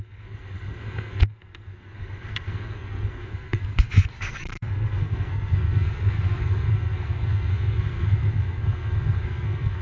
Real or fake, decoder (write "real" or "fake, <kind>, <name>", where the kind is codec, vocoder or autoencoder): fake, codec, SNAC